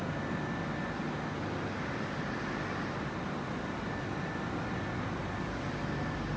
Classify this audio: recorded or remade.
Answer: recorded